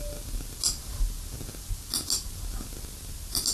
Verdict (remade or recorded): recorded